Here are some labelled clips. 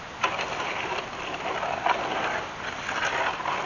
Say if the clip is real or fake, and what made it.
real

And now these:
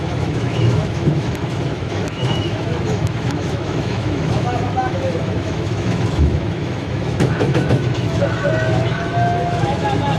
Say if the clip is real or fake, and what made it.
fake, autoencoder, DAC-VAE